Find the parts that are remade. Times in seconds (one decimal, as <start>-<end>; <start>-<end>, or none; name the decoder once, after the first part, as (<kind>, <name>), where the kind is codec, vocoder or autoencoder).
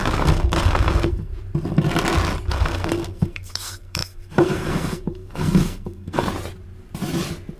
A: 0.0-1.3 (codec, SNAC); 2.5-6.2